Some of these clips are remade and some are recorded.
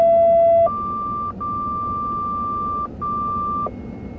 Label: recorded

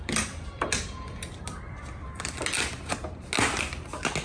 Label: recorded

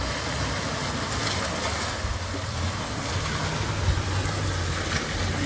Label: recorded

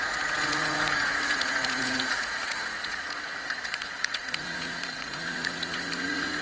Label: remade